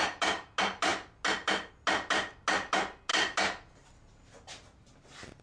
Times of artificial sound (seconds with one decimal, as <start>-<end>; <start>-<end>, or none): none